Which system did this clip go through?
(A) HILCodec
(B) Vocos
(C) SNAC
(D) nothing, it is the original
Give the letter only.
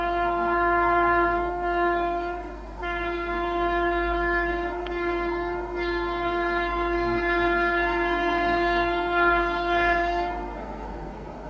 C